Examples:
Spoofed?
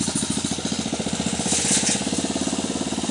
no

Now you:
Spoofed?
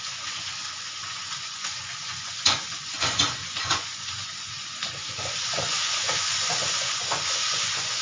yes